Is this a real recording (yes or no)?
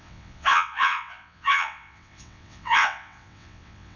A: no